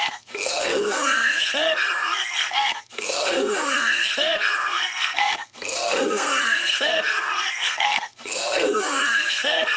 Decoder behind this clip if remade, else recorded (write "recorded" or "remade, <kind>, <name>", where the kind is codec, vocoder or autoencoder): remade, codec, SNAC